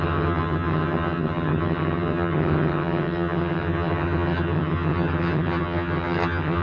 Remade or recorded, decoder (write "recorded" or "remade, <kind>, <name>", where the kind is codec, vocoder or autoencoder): remade, vocoder, HiFi-GAN